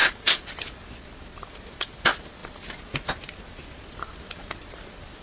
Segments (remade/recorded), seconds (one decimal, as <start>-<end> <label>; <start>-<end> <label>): 0.0-5.2 recorded